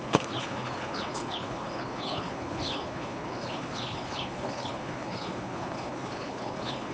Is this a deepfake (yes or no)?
yes